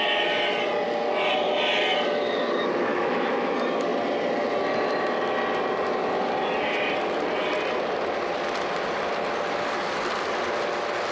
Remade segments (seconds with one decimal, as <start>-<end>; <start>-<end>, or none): 2.9-3.5